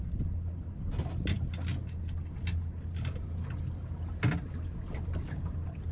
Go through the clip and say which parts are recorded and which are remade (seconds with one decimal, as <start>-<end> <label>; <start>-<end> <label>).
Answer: 0.0-5.9 recorded